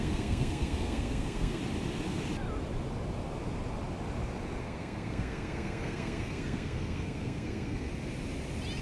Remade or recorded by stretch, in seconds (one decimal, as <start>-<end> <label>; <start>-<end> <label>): 0.0-1.6 remade; 1.6-4.6 recorded; 4.6-7.9 remade; 7.9-8.8 recorded